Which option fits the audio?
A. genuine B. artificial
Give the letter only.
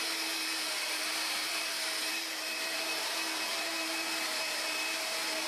B